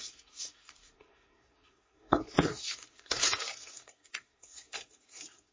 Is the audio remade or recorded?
remade